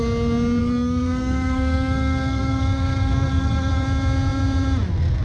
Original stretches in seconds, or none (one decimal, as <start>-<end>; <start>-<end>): 0.0-0.6; 3.7-5.2